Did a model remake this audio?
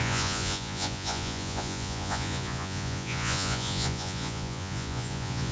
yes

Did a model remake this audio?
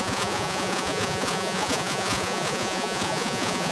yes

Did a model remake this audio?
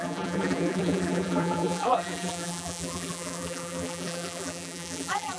yes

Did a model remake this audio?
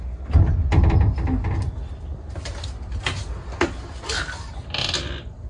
no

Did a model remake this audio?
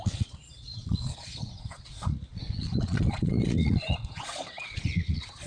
yes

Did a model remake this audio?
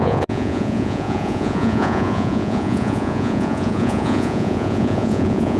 yes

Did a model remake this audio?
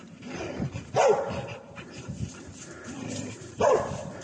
yes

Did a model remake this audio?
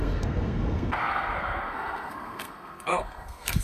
yes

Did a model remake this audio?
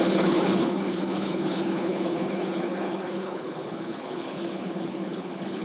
yes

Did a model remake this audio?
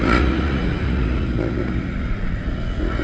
yes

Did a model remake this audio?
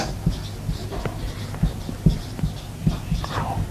no